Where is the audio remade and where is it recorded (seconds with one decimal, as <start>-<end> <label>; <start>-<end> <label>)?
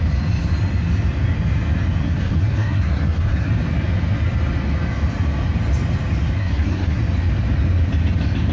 0.0-2.0 recorded; 2.0-3.5 remade; 3.5-6.4 recorded; 6.4-7.0 remade; 7.0-8.5 recorded